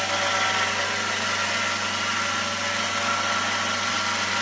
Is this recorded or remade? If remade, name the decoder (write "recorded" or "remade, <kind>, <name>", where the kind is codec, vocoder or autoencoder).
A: recorded